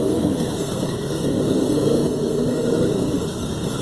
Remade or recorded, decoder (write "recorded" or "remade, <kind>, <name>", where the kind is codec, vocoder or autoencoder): remade, codec, SNAC